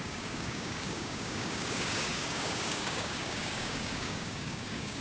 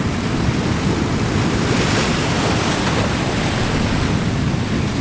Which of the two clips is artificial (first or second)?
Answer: first